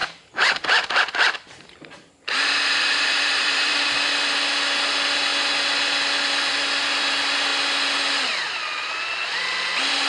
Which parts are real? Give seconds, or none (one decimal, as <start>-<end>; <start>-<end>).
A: 3.8-10.1